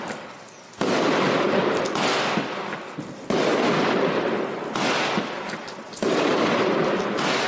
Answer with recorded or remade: recorded